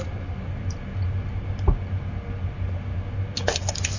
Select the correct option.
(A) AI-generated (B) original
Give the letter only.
B